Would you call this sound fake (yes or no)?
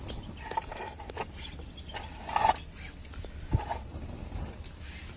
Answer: no